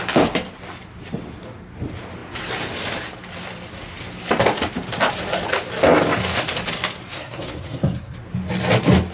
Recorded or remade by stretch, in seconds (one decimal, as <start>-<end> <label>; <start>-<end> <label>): 0.0-7.1 recorded; 7.1-8.2 remade; 8.2-9.1 recorded